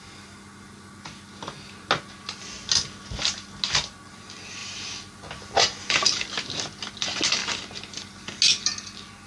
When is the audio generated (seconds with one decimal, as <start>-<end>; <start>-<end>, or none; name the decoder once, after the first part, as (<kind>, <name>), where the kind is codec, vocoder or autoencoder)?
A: none